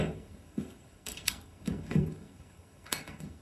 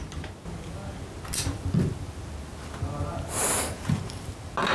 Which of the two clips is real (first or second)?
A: second